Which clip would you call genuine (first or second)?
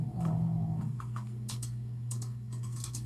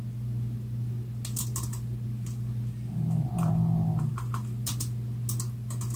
second